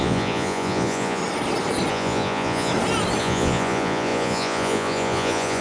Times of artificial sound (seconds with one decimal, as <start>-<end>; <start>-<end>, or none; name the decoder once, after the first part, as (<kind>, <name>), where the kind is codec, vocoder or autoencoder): 0.0-1.2 (vocoder, Vocos); 1.9-2.7; 3.2-5.6

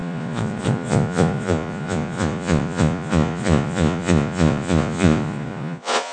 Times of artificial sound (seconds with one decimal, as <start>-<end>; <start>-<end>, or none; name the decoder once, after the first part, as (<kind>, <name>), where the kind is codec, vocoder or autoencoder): 0.0-6.1 (vocoder, Vocos)

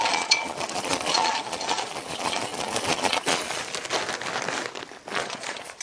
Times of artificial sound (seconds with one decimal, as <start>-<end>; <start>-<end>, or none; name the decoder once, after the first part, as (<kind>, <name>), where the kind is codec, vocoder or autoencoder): 0.0-3.6 (vocoder, Vocos); 5.1-5.8

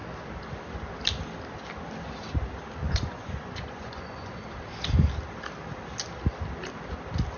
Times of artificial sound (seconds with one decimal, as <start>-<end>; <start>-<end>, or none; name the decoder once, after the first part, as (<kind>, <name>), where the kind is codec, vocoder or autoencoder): 2.8-4.4 (vocoder, Vocos)

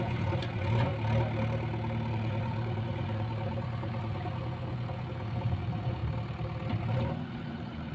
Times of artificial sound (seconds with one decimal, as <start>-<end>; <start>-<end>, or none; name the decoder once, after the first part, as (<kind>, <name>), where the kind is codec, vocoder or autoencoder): 0.0-0.9 (vocoder, Vocos); 2.1-6.0; 6.8-7.9